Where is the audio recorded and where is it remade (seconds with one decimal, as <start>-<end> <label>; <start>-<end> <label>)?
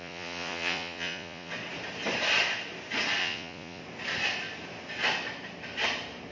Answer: 0.0-1.5 remade; 1.5-3.2 recorded; 3.2-3.8 remade; 3.8-6.3 recorded